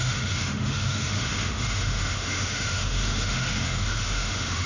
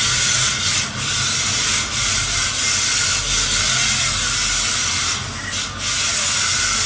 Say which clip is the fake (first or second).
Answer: first